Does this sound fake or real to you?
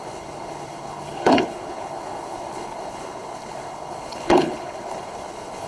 fake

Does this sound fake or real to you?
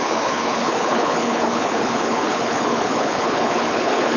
fake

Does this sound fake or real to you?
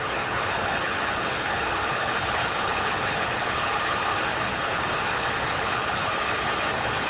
fake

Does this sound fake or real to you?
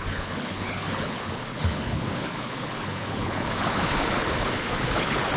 fake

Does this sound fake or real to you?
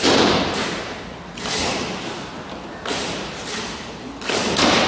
real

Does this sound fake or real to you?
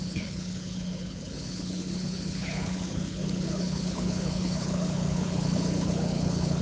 fake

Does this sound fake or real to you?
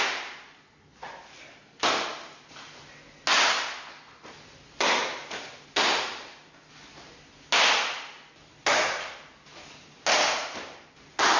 real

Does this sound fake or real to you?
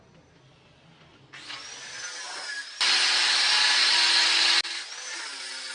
real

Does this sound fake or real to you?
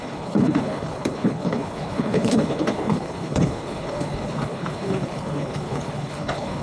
fake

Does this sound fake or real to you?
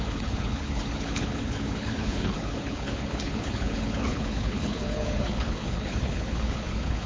fake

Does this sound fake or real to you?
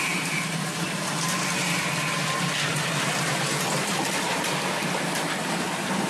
real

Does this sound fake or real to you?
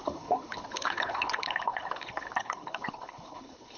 fake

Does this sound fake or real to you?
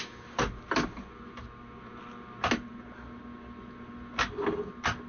real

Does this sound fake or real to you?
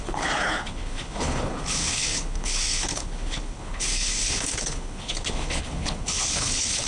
fake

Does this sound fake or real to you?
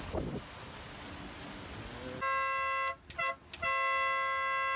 real